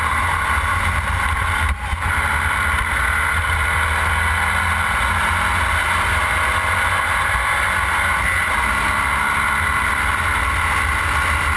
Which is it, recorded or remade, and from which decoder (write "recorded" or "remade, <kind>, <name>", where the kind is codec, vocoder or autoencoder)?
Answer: recorded